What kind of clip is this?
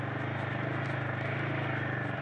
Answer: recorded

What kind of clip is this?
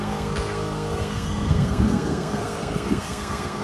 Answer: remade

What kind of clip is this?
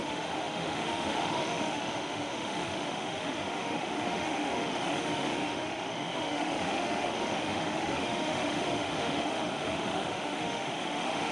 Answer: remade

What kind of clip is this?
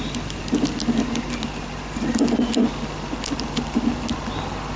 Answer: recorded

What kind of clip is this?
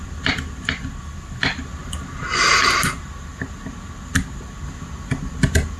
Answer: recorded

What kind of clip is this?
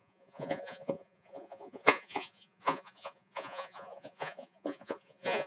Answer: remade